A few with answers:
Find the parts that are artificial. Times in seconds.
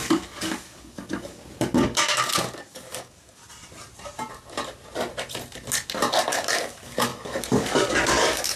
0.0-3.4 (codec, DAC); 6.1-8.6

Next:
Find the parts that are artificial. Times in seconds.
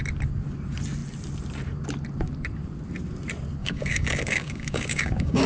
3.6-5.5 (codec, DAC)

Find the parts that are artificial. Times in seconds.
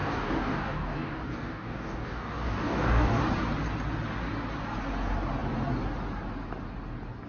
0.0-3.2 (codec, DAC)